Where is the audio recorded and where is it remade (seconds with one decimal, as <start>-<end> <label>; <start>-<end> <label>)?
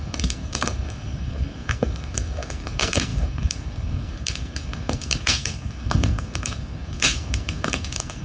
0.0-8.2 remade